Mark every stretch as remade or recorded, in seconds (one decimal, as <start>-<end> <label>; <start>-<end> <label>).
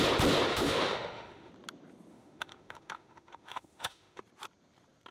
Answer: 0.0-0.5 recorded; 0.5-1.5 remade; 1.5-2.1 recorded; 2.1-4.2 remade; 4.2-5.1 recorded